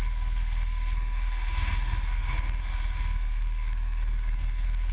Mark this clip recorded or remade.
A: remade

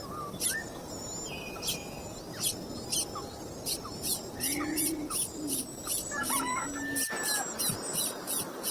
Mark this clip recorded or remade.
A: recorded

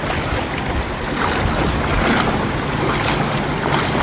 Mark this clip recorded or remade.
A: recorded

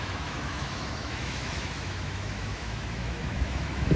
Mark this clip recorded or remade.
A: remade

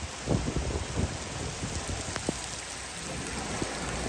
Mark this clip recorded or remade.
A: recorded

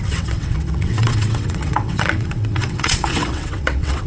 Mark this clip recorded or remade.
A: remade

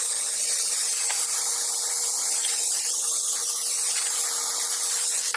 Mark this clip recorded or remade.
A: recorded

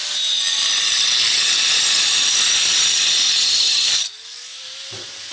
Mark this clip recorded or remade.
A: remade